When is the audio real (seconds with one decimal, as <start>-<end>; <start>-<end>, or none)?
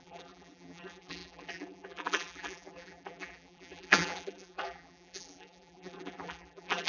none